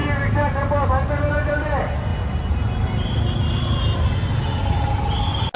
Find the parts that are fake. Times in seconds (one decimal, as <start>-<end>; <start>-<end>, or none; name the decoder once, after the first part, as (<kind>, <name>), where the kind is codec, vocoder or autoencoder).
none